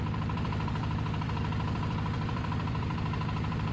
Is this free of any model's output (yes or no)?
no